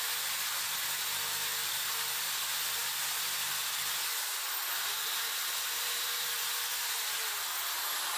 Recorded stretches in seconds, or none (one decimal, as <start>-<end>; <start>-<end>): 0.0-8.2